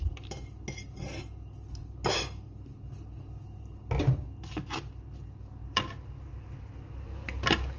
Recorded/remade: recorded